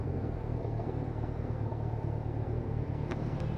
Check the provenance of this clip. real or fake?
fake